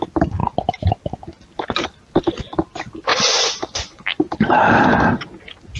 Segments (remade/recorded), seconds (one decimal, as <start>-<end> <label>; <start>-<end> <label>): 0.0-3.1 recorded; 3.1-4.0 remade; 4.0-5.8 recorded